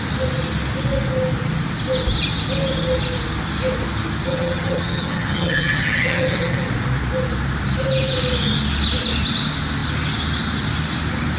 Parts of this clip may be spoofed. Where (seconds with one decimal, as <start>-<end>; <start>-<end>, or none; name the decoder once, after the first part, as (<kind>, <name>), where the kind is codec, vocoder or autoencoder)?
4.3-6.7 (vocoder, HiFi-GAN)